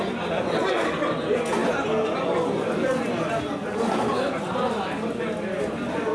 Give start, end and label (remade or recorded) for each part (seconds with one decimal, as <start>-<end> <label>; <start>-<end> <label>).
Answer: 0.0-6.1 recorded